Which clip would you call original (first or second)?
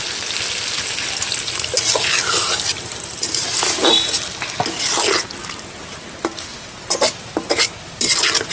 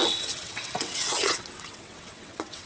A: first